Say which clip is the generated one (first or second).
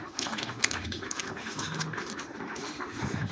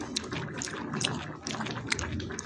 first